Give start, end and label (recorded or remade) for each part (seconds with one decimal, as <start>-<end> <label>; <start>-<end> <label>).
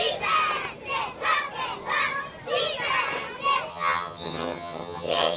0.0-3.7 recorded; 3.7-5.4 remade